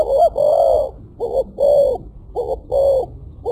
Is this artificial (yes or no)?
no